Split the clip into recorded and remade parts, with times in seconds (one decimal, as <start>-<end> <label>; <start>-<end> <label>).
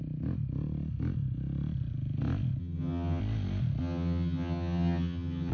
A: 0.0-2.6 recorded; 2.6-3.2 remade; 3.2-3.8 recorded; 3.8-5.5 remade